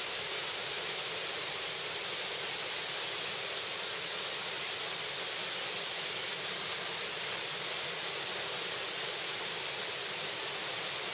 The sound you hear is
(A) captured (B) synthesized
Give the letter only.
A